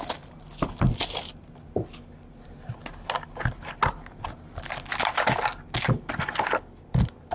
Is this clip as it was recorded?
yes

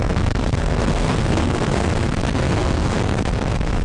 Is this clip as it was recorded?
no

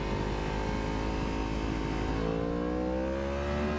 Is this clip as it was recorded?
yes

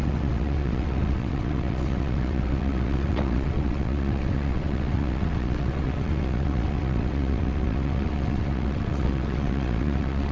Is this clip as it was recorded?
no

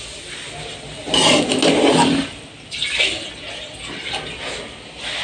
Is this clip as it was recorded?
yes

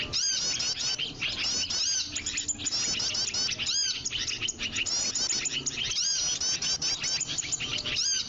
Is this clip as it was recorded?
yes